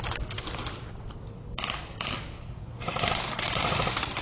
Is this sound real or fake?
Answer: real